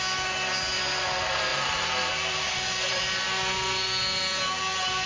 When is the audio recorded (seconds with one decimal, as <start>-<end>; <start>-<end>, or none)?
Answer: 0.0-1.5; 3.0-5.1